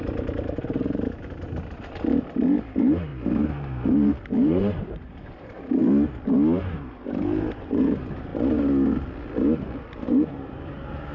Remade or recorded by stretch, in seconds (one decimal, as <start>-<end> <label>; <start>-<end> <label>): 0.0-5.8 remade; 5.8-6.6 recorded; 6.6-8.3 remade; 8.3-10.3 recorded; 10.3-11.1 remade